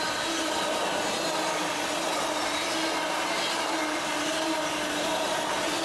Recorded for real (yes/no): yes